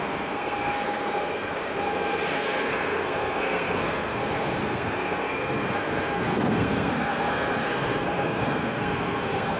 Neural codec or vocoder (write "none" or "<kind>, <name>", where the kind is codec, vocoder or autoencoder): codec, SNAC